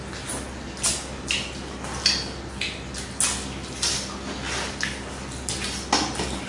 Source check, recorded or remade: recorded